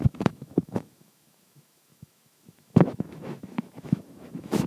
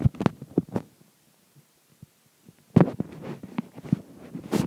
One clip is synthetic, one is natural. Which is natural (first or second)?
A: second